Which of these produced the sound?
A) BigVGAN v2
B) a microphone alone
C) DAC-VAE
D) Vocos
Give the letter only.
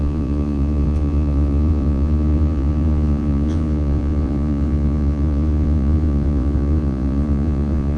D